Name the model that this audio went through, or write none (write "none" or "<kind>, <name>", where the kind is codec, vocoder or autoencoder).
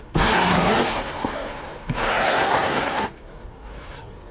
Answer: codec, SNAC